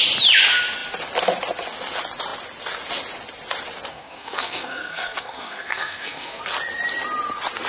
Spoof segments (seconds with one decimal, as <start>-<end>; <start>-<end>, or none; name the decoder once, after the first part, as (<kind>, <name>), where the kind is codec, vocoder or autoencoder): 3.9-6.4 (codec, SNAC)

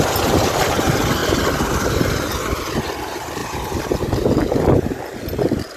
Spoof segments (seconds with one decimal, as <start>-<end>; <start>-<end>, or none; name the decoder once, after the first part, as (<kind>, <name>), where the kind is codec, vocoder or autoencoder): none

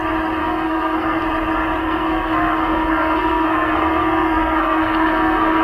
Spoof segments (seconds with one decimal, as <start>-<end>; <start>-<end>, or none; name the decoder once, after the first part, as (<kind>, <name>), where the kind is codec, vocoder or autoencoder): 0.4-1.2 (codec, SNAC); 1.8-5.6

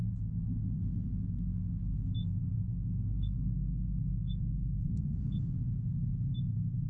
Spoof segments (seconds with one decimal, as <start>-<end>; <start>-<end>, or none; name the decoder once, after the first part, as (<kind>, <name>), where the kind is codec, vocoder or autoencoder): 2.2-5.4 (codec, SNAC)

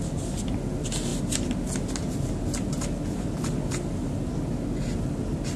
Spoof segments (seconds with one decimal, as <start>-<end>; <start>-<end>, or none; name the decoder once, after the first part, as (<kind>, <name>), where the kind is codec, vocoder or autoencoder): none

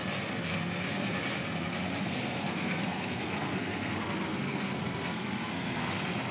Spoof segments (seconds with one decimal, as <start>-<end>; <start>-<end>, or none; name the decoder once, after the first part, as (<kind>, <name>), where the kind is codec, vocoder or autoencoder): 2.0-5.8 (codec, SNAC)

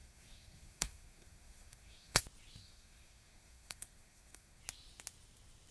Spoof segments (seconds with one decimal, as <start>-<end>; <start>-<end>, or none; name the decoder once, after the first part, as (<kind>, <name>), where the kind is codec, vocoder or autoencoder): 0.0-2.2 (codec, SNAC); 2.6-4.6

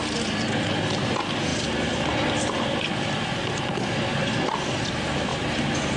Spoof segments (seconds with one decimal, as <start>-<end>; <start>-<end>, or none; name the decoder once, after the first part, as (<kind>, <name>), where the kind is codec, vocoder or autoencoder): none